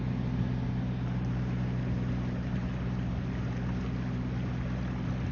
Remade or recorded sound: recorded